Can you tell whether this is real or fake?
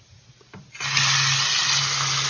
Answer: real